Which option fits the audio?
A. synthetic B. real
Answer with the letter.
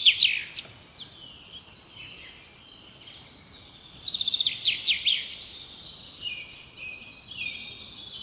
B